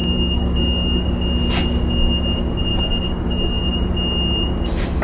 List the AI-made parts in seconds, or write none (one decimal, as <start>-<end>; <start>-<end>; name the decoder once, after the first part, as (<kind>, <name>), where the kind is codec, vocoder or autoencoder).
0.0-1.0 (codec, DAC); 2.7-3.7